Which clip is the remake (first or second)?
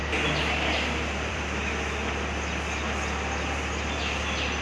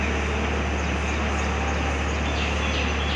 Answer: first